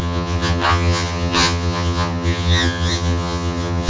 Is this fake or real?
fake